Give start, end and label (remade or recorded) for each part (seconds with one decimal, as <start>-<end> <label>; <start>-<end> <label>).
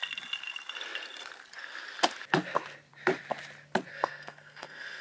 0.0-3.9 recorded; 3.9-5.0 remade